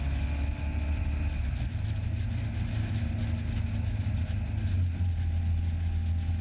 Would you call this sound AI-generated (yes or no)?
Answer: no